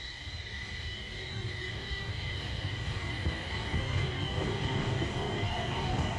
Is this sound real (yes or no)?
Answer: no